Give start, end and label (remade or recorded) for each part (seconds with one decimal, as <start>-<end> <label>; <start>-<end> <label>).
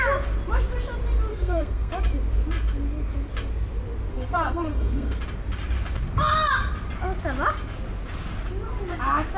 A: 0.0-1.3 recorded; 1.3-1.9 remade; 1.9-4.1 recorded; 4.1-5.2 remade; 5.2-9.4 recorded